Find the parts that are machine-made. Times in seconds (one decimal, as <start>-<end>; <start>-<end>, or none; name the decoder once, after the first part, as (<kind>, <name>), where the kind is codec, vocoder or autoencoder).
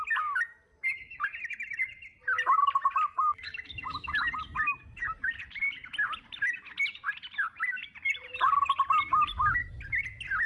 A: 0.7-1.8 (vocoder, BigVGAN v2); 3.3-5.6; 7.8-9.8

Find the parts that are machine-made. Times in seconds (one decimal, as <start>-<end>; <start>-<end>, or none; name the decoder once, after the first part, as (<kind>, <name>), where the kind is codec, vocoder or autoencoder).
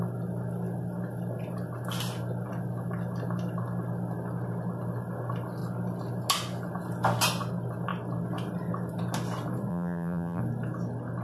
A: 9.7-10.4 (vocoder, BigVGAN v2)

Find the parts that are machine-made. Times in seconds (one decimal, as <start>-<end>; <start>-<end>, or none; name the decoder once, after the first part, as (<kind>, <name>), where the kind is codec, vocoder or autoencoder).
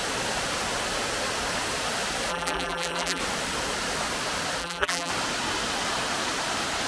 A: 2.3-3.2 (vocoder, BigVGAN v2); 4.6-5.1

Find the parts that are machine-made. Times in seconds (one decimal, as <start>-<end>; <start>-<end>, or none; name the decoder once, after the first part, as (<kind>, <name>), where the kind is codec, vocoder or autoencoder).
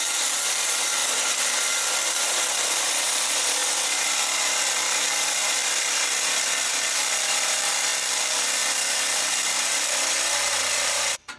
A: 0.0-3.6 (vocoder, BigVGAN v2); 4.6-11.4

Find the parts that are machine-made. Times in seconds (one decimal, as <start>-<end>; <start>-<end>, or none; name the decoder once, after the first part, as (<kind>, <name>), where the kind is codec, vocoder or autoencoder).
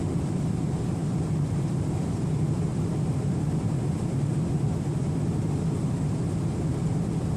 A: 1.0-2.2 (vocoder, BigVGAN v2); 2.7-5.0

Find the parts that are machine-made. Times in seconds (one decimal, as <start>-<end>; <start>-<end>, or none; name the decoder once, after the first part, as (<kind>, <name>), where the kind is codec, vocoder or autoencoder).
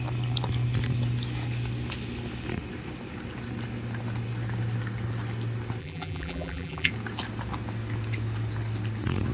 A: 5.8-6.9 (vocoder, BigVGAN v2)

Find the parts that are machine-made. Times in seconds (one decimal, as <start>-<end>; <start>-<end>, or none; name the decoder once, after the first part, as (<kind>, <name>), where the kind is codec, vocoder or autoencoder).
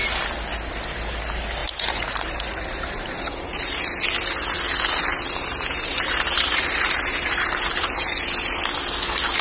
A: 1.6-3.8 (vocoder, BigVGAN v2); 5.1-8.1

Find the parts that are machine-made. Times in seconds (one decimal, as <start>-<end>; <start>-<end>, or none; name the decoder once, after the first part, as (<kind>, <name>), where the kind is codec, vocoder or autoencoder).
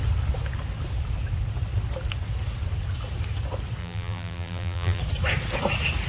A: 3.8-5.0 (vocoder, BigVGAN v2)